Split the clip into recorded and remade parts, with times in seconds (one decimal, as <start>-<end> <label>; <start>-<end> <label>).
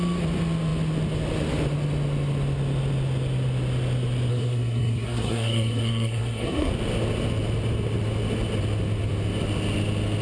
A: 0.0-4.3 recorded; 4.3-6.7 remade; 6.7-10.2 recorded